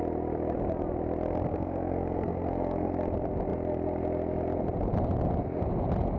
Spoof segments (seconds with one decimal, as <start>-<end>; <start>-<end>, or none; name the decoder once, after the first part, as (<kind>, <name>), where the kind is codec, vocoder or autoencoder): 1.5-2.9 (codec, SNAC)

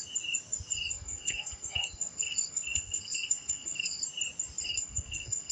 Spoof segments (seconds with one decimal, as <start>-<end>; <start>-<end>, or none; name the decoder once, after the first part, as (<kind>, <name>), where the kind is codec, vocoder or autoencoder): 0.9-4.0 (codec, SNAC); 4.7-5.5

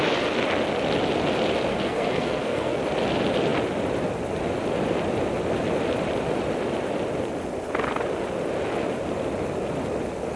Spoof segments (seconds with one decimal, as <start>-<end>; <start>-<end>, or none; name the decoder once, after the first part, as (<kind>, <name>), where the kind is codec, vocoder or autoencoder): 1.7-2.8 (codec, SNAC)

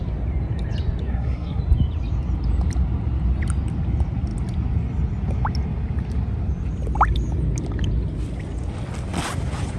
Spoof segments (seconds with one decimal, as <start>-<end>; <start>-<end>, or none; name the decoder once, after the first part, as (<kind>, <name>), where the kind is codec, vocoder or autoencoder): 1.1-1.6 (codec, SNAC)

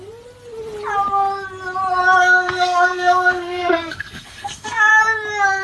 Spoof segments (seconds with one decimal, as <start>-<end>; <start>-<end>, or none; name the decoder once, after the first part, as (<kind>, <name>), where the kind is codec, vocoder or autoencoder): 2.2-4.9 (codec, SNAC)